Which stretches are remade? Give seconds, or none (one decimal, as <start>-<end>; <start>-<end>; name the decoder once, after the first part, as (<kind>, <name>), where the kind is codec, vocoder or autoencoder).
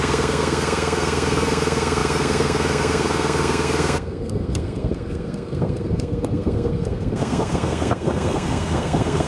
0.0-9.3 (codec, SNAC)